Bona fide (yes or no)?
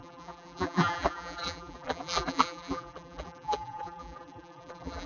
no